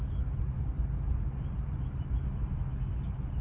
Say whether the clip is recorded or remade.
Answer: recorded